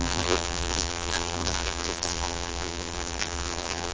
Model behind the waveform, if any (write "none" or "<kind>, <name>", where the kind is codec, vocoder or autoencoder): vocoder, BigVGAN v2